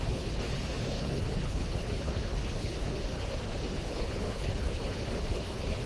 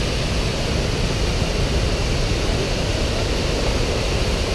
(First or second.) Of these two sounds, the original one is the second